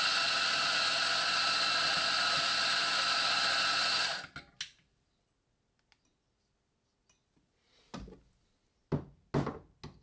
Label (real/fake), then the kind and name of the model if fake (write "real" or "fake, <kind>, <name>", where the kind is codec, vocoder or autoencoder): real